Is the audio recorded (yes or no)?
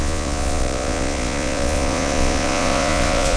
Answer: no